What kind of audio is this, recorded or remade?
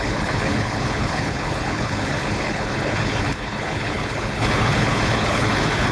remade